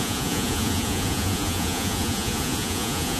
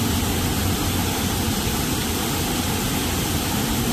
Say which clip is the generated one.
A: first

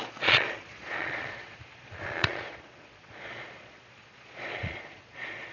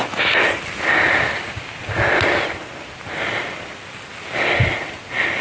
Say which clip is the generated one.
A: first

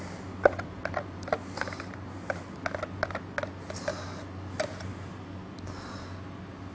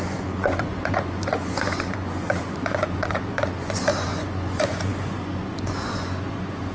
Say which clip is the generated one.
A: second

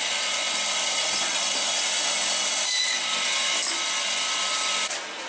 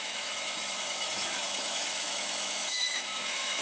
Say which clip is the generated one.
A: second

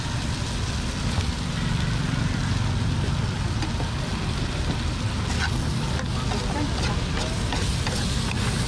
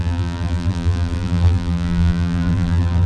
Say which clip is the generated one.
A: second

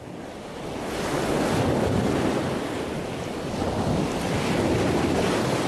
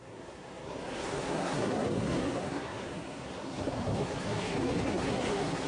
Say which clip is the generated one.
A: second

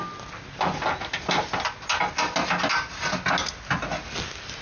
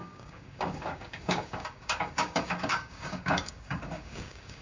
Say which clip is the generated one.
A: second